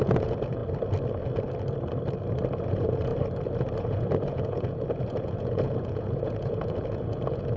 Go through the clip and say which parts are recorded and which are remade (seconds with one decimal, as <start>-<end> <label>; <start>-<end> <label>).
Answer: 0.0-0.6 remade; 0.6-2.7 recorded; 2.7-3.1 remade; 3.1-3.8 recorded; 3.8-7.6 remade